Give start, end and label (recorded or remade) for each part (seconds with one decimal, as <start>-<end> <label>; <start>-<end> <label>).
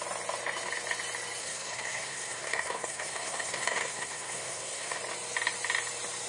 0.0-1.4 recorded; 1.4-5.0 remade; 5.0-6.3 recorded